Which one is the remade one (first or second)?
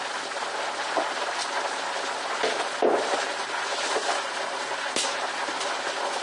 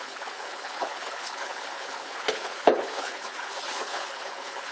second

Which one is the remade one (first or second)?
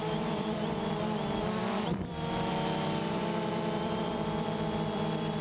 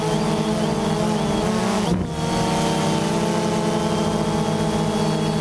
first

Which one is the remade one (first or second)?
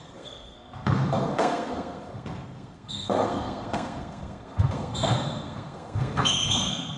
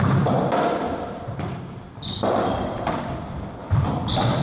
first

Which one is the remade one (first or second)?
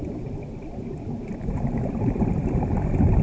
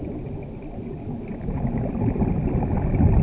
first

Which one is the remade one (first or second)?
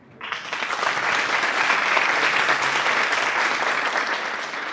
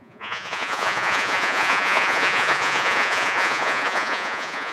second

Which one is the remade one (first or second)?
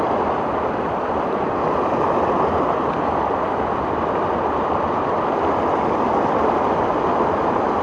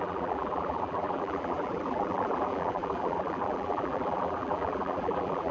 second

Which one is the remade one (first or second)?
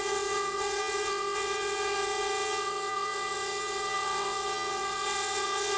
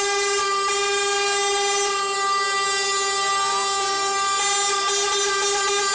first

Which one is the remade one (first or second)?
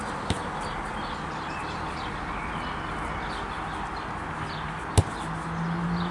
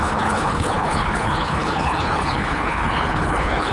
second